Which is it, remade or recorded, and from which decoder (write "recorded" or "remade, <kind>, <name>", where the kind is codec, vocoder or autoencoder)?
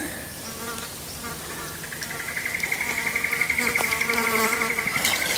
recorded